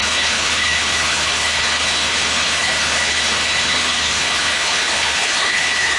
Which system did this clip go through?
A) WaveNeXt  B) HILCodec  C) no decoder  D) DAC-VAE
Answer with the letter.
B